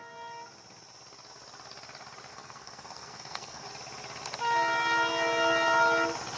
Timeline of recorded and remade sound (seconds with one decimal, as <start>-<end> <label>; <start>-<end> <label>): 0.0-2.3 recorded; 2.3-3.7 remade; 3.7-6.4 recorded